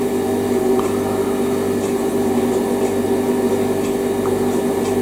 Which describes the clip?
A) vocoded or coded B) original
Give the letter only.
B